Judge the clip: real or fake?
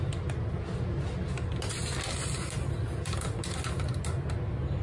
real